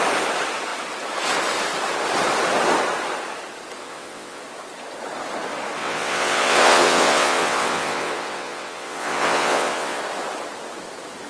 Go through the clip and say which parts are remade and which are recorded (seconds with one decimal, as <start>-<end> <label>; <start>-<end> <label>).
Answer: 0.0-3.8 recorded; 3.8-4.4 remade; 4.4-5.8 recorded; 5.8-10.0 remade; 10.0-11.3 recorded